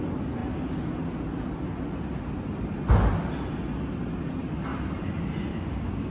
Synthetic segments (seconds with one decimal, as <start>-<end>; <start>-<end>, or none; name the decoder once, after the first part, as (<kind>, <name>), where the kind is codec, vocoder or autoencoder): 5.5-6.1 (codec, DAC)